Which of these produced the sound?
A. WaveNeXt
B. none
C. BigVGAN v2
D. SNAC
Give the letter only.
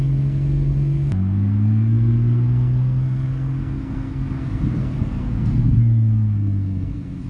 D